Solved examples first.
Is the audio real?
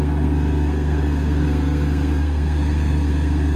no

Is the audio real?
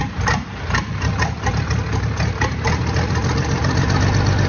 yes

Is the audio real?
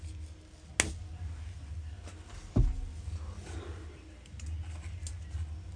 yes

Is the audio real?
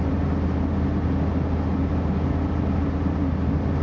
yes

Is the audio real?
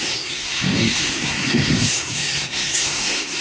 no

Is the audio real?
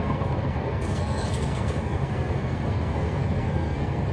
no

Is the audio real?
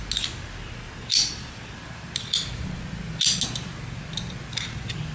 yes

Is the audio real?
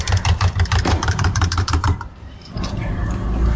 no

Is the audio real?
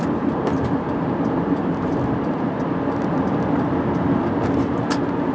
yes